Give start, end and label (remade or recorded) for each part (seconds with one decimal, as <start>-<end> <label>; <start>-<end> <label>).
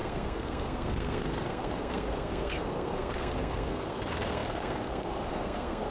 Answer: 0.0-5.9 remade